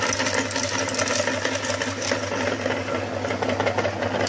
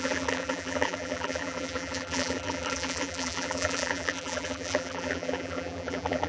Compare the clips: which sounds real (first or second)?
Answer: first